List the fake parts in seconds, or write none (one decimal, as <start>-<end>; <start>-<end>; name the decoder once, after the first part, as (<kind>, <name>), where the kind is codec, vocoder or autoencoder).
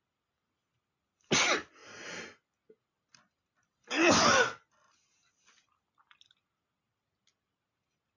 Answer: none